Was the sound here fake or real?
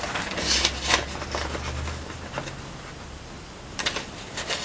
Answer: real